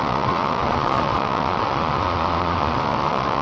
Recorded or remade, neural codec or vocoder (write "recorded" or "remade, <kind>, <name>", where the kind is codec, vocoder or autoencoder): remade, vocoder, Vocos